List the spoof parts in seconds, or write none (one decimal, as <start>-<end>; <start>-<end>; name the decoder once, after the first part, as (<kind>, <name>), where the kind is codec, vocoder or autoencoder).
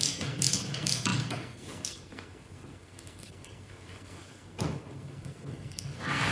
0.0-6.3 (codec, SNAC)